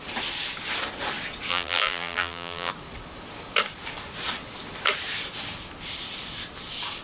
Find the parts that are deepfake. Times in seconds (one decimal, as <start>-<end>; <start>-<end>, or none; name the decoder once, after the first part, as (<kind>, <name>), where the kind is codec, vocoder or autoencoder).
1.5-2.7 (vocoder, BigVGAN v2)